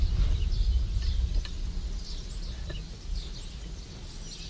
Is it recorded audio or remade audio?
recorded